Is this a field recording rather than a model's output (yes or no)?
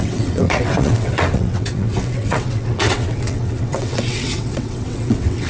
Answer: no